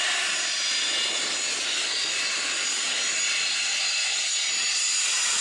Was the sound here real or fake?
real